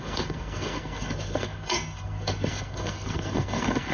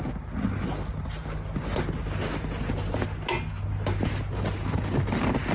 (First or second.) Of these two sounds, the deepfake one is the first